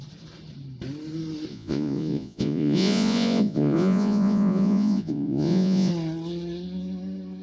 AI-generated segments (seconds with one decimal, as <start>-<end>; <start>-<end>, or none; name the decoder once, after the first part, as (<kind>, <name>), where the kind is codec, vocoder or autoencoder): 1.5-5.9 (vocoder, Vocos)

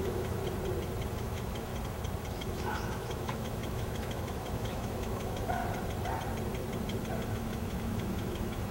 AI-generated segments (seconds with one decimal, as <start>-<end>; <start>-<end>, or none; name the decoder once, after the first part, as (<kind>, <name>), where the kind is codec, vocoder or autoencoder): 0.0-0.4 (autoencoder, DAC-VAE); 1.1-1.7; 2.3-5.6; 7.3-8.7

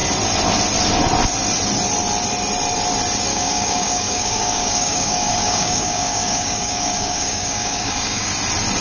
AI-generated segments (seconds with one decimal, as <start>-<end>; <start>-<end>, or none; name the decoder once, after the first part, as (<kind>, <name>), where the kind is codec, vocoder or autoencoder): 3.3-8.3 (codec, DAC)